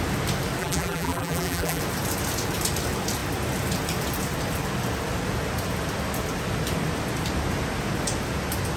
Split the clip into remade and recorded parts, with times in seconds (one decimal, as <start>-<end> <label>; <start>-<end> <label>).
0.0-0.6 recorded; 0.6-1.8 remade; 1.8-8.8 recorded